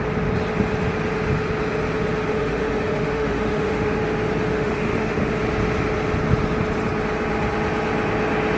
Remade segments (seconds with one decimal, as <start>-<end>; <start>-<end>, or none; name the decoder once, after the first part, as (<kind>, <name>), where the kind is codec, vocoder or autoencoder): 2.3-4.0 (autoencoder, DAC-VAE); 4.5-5.3

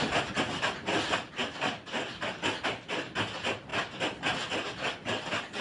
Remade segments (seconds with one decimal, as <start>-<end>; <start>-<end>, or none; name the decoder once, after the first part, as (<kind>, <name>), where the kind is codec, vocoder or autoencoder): none

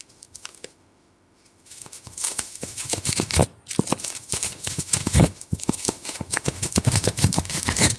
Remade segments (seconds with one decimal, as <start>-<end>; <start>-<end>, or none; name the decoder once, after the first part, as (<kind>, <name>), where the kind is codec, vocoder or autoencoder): 0.0-3.4 (autoencoder, DAC-VAE); 4.0-8.0

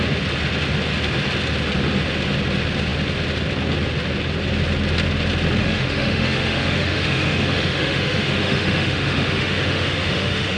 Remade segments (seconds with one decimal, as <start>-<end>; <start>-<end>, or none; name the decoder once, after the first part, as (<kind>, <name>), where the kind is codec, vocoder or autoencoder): 5.6-10.6 (autoencoder, DAC-VAE)

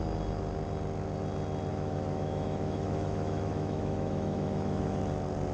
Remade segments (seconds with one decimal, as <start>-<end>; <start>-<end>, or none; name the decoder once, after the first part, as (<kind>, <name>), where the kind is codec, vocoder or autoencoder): 1.7-5.0 (autoencoder, DAC-VAE)

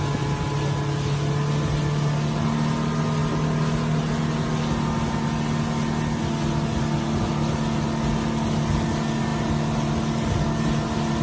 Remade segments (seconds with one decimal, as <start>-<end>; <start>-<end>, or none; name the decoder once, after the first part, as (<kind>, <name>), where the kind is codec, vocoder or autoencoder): none

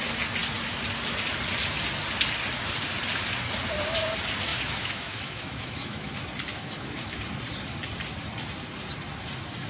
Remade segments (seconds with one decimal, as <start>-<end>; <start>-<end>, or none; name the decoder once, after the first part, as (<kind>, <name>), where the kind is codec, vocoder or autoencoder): 4.5-6.1 (autoencoder, DAC-VAE); 6.5-7.2

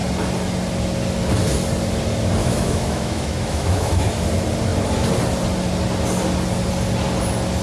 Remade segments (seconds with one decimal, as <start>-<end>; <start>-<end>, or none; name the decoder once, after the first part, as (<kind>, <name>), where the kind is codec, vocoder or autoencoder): 2.4-4.1 (autoencoder, DAC-VAE)